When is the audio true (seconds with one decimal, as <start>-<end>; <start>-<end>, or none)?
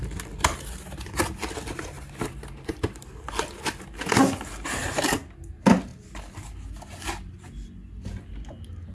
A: 0.0-8.9